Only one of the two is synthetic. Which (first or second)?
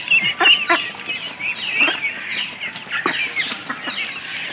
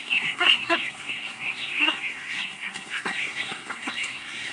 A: second